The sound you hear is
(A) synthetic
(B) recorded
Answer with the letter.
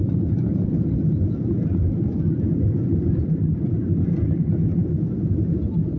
B